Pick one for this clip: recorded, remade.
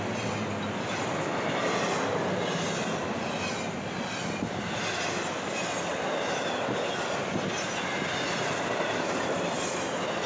recorded